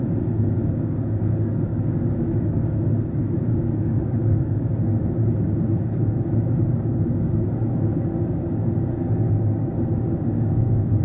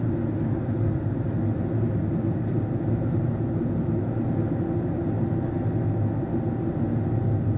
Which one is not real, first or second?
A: first